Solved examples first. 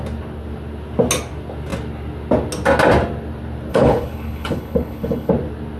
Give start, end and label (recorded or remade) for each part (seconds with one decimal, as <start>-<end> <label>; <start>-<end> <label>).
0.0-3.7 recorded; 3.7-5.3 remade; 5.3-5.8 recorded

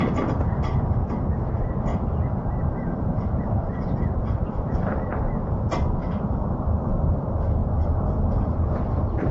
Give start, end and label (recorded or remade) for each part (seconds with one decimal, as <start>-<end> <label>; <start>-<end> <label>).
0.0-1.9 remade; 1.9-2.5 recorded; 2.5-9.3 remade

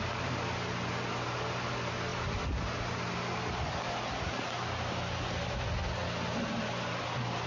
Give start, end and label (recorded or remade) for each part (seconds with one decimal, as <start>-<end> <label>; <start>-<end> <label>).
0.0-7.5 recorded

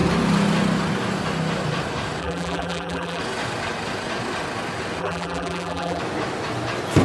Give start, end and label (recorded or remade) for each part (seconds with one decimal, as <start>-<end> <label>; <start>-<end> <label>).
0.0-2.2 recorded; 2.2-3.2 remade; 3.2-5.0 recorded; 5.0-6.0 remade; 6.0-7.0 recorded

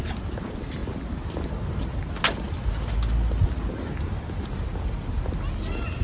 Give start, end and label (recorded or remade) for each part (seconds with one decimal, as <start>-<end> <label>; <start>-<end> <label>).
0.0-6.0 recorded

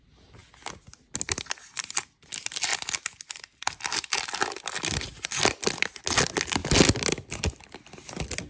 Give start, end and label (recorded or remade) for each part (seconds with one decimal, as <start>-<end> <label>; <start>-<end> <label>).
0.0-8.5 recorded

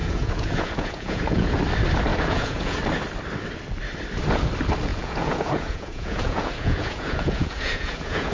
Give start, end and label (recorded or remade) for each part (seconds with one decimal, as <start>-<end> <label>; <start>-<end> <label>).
0.0-1.6 remade; 1.6-2.1 recorded; 2.1-2.8 remade; 2.8-4.9 recorded; 4.9-8.3 remade

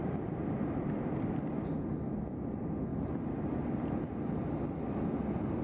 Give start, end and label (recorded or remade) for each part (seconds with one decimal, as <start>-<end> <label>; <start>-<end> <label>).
0.0-1.4 remade; 1.4-2.9 recorded; 2.9-3.5 remade; 3.5-5.6 recorded